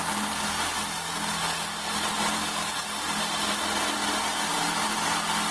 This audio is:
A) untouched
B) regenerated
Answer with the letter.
A